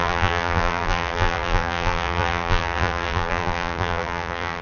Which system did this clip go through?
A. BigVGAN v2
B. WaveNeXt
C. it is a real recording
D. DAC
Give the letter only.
A